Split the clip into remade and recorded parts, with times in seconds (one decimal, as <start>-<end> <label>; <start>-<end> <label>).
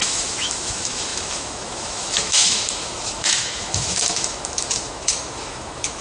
0.0-6.0 remade